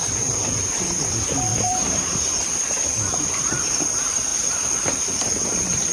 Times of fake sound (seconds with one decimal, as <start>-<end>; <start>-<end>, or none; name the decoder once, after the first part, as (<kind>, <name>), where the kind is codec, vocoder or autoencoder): 1.5-3.7 (vocoder, BigVGAN v2)